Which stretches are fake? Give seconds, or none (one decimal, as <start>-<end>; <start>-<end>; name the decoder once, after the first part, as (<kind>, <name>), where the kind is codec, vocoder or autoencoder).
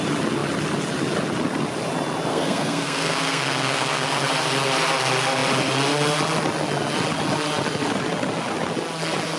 2.3-4.3 (codec, SNAC)